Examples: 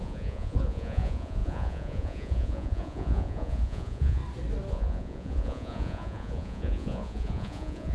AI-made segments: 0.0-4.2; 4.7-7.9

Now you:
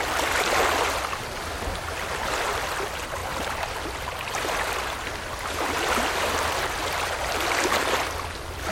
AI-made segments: none

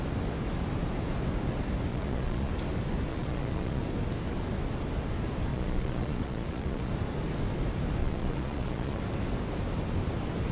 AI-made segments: 1.9-2.5; 3.1-3.8; 5.5-6.9; 8.0-9.0

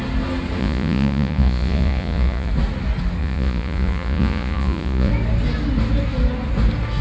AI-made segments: 0.6-2.5; 3.2-5.1

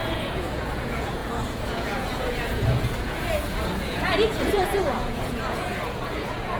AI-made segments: 0.0-6.6